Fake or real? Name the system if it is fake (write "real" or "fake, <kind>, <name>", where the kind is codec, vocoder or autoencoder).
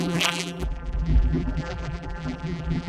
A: fake, vocoder, BigVGAN v2